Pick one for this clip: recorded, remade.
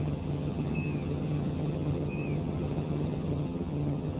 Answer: remade